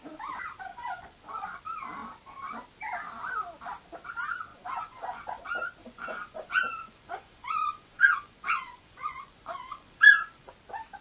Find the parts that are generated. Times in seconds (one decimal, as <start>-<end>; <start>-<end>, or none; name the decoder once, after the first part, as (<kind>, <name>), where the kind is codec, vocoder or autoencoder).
0.7-1.6 (vocoder, Vocos); 4.5-5.2; 5.8-10.5